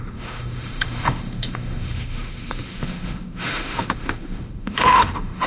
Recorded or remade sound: remade